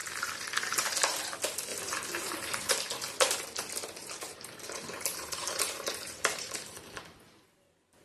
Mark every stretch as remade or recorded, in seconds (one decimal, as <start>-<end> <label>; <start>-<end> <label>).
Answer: 0.0-1.7 recorded; 1.7-2.7 remade; 2.7-4.0 recorded; 4.0-6.5 remade; 6.5-8.0 recorded